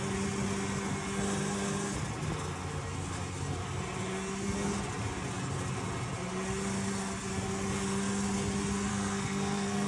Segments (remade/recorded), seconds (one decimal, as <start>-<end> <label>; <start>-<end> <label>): 0.0-8.9 recorded; 8.9-9.9 remade